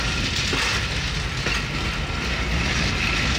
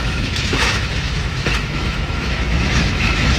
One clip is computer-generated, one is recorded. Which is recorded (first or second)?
first